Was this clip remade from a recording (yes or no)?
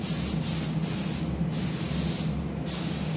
no